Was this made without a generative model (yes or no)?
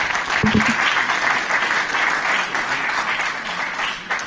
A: yes